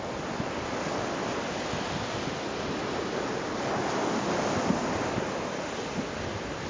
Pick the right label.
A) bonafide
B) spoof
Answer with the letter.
A